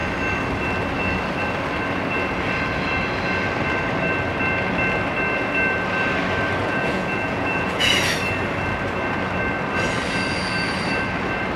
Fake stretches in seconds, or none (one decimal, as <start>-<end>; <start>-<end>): 6.6-7.9